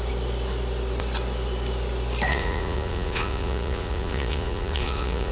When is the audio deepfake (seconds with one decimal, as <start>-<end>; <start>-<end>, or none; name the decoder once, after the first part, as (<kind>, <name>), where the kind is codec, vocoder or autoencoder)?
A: 2.3-5.3 (vocoder, Vocos)